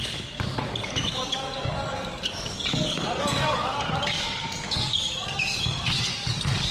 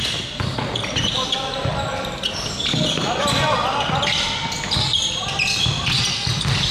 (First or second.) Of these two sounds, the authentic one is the second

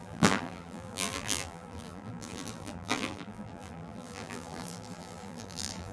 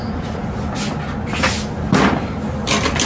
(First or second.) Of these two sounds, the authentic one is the second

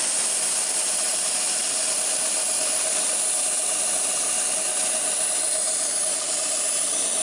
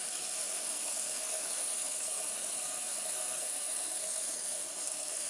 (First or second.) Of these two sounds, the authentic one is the first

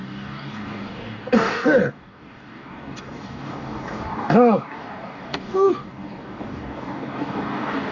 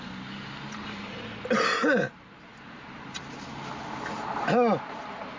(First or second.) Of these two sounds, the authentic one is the second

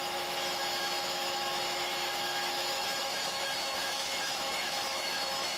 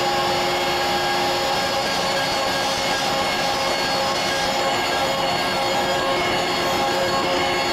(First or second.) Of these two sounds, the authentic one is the second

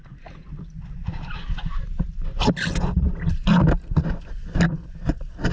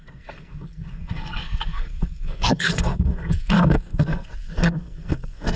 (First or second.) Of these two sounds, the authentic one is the first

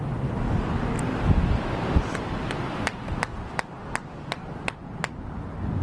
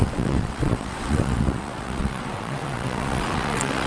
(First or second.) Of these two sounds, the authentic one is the first